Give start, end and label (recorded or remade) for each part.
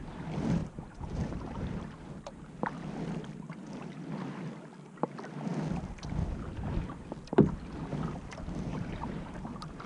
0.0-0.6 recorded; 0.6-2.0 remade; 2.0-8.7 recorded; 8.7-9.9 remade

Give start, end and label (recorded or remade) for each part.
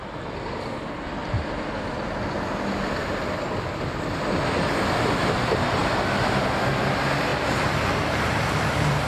0.0-1.2 recorded; 1.2-2.1 remade; 2.1-3.0 recorded; 3.0-4.2 remade; 4.2-5.8 recorded; 5.8-6.7 remade; 6.7-7.3 recorded; 7.3-9.1 remade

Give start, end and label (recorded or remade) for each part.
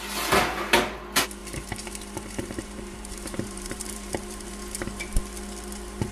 0.0-1.4 recorded; 1.4-5.1 remade; 5.1-6.1 recorded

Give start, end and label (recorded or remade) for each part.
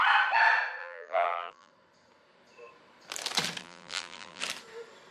0.0-0.8 recorded; 0.8-1.7 remade; 1.7-3.6 recorded; 3.6-4.4 remade; 4.4-5.1 recorded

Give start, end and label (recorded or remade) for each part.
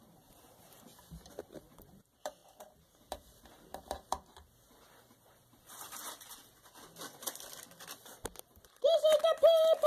0.0-0.9 remade; 0.9-1.4 recorded; 1.4-6.4 remade; 6.4-8.4 recorded; 8.4-9.9 remade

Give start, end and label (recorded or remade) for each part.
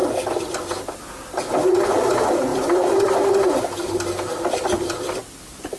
0.0-2.5 recorded; 2.5-3.1 remade; 3.1-5.8 recorded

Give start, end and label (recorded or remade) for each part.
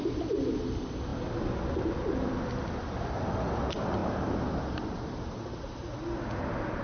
0.0-4.0 recorded; 4.0-4.7 remade; 4.7-6.8 recorded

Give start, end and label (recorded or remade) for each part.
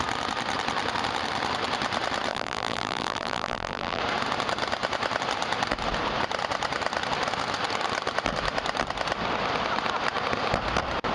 0.0-2.3 recorded; 2.3-4.0 remade; 4.0-11.1 recorded